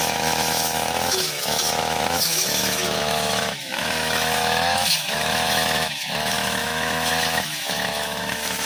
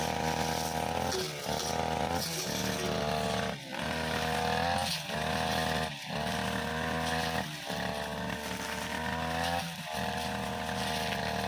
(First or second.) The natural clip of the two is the second